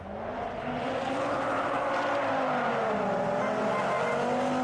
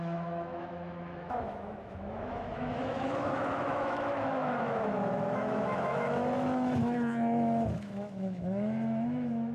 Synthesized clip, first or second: second